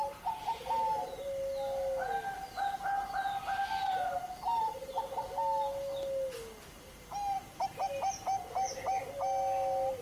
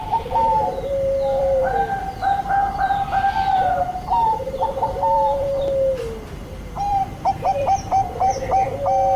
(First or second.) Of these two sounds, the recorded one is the first